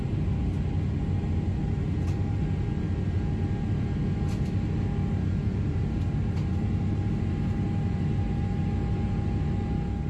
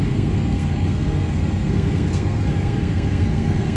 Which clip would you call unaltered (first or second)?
first